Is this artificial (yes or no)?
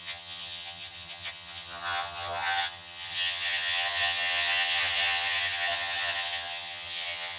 yes